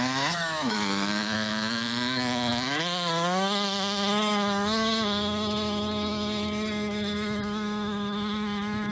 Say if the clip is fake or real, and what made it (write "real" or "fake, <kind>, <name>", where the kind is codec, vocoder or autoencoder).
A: fake, autoencoder, DAC-VAE